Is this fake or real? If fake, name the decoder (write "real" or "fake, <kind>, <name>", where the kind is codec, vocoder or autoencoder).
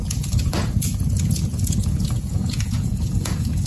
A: fake, vocoder, Vocos